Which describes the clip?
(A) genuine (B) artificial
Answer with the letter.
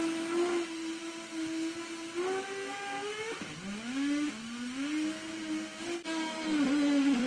A